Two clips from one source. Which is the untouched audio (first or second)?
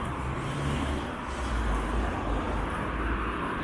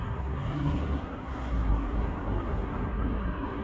first